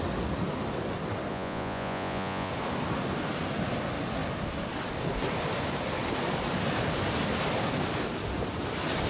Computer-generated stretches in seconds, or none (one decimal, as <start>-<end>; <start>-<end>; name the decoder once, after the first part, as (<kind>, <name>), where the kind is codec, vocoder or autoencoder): 1.3-2.5 (vocoder, Vocos)